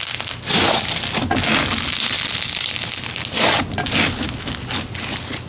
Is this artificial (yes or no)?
no